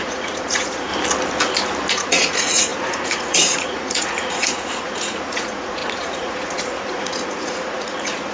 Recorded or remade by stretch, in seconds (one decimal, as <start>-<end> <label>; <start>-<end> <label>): 0.0-0.9 remade; 0.9-1.9 recorded; 1.9-8.3 remade